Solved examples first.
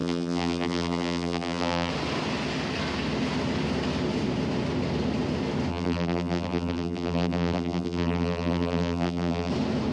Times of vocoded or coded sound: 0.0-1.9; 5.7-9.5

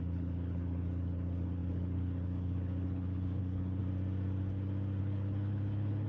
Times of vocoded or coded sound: 0.0-3.8; 5.0-6.1

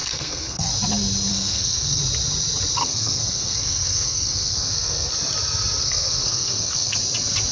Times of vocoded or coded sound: 0.0-0.7; 1.3-2.0; 2.8-5.1; 5.8-7.0

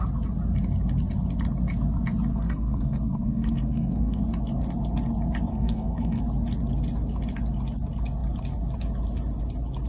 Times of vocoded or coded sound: 2.3-4.2; 5.5-6.2

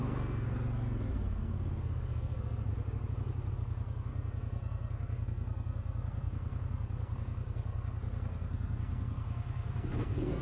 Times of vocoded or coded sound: 0.0-2.7; 3.5-10.4

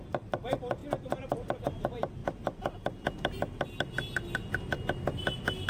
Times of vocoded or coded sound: 0.0-0.8; 1.6-2.2